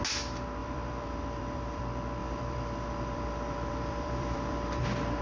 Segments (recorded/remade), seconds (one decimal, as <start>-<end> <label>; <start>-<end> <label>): 0.0-0.6 recorded; 0.6-1.8 remade; 1.8-2.2 recorded; 2.2-4.8 remade; 4.8-5.2 recorded